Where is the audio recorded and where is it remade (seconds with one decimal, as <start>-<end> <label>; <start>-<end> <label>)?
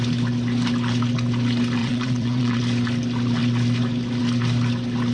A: 0.0-1.8 recorded; 1.8-2.6 remade; 2.6-5.1 recorded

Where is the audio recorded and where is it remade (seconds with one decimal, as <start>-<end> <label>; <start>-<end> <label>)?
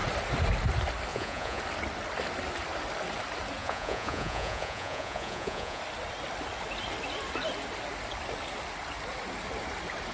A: 0.0-1.1 recorded; 1.1-1.6 remade; 1.6-3.6 recorded; 3.6-5.8 remade; 5.8-10.1 recorded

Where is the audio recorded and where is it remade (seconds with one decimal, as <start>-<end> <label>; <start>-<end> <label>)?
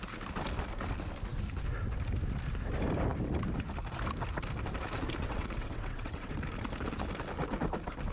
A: 0.0-5.2 recorded; 5.2-6.3 remade; 6.3-8.1 recorded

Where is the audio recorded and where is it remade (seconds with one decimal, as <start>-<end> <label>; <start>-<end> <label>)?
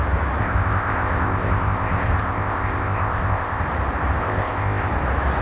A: 0.0-0.4 recorded; 0.4-3.6 remade; 3.6-4.2 recorded; 4.2-4.9 remade; 4.9-5.4 recorded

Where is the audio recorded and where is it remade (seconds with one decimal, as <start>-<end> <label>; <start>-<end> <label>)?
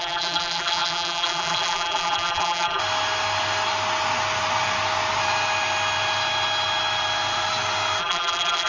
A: 0.0-2.8 remade; 2.8-8.0 recorded; 8.0-8.7 remade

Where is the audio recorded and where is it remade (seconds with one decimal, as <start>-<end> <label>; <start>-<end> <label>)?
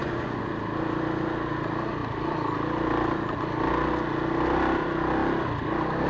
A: 0.0-0.5 remade; 0.5-6.1 recorded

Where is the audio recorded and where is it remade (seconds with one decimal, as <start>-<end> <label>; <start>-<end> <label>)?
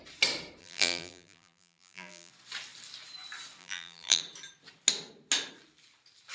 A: 0.0-0.6 recorded; 0.6-2.3 remade; 2.3-3.6 recorded; 3.6-4.2 remade; 4.2-6.3 recorded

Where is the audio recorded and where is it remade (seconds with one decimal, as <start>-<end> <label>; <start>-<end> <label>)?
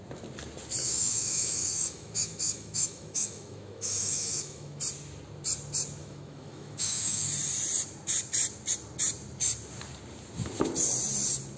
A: 0.0-0.8 recorded; 0.8-4.8 remade; 4.8-6.0 recorded; 6.0-7.3 remade; 7.3-11.6 recorded